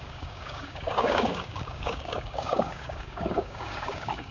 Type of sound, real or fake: fake